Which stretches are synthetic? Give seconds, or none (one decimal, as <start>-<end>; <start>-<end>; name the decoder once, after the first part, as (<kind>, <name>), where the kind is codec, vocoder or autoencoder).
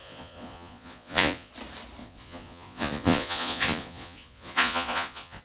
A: 0.0-1.5 (vocoder, Vocos); 2.0-5.4